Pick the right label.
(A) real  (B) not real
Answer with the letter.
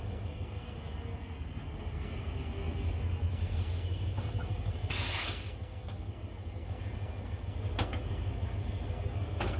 B